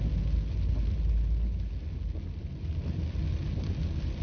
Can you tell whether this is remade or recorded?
recorded